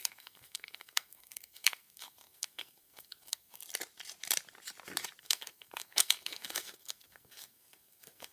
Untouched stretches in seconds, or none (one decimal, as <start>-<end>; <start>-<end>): 3.6-5.2